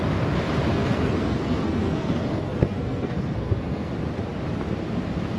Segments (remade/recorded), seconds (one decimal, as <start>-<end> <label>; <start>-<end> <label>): 0.0-0.7 recorded; 0.7-3.9 remade; 3.9-5.4 recorded